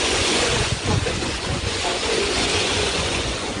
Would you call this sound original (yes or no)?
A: no